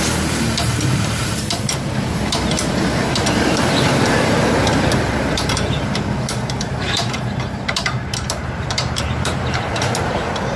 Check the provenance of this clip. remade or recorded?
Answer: remade